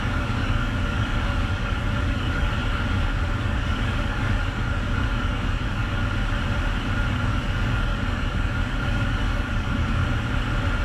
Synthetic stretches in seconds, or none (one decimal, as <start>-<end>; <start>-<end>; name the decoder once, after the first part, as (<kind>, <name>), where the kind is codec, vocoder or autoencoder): 0.0-6.0 (codec, DAC); 7.1-10.0